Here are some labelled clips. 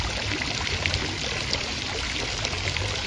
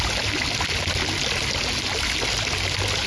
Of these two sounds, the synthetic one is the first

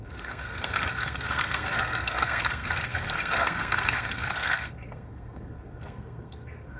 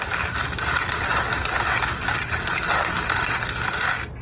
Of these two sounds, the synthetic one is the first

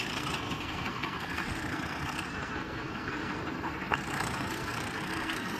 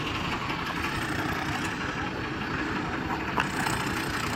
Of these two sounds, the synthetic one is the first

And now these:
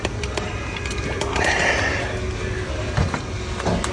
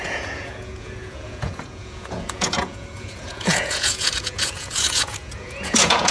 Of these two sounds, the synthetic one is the second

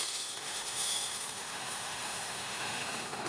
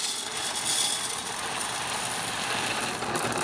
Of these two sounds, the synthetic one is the first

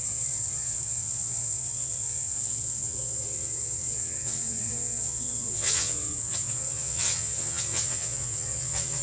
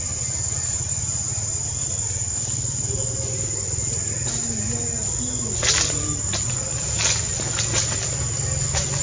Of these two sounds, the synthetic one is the first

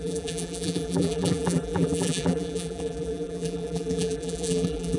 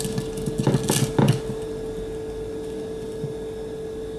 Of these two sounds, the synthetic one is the first